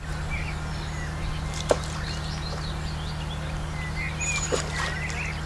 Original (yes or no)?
yes